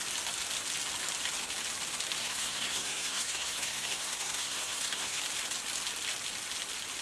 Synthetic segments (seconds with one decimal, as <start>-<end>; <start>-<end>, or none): 2.2-5.2